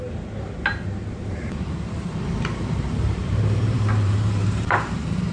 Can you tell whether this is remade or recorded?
remade